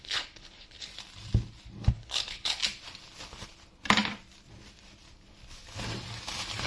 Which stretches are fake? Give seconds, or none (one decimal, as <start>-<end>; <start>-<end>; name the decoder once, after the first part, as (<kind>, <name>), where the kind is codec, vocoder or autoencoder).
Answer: 0.0-0.9 (codec, HILCodec); 1.9-2.6